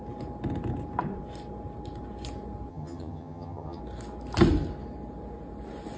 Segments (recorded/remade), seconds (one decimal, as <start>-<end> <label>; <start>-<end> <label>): 0.0-2.7 recorded; 2.7-3.8 remade; 3.8-6.0 recorded